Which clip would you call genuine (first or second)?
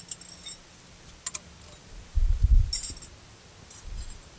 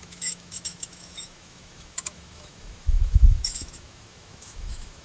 first